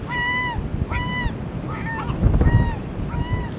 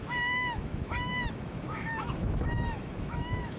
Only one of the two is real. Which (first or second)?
first